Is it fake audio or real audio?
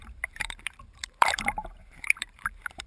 fake